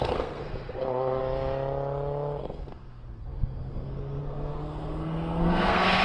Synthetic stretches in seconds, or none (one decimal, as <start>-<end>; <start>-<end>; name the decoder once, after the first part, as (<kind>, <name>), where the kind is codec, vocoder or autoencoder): 0.0-1.2 (codec, SNAC); 2.4-6.0